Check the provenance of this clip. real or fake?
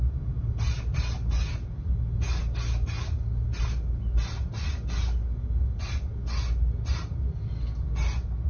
real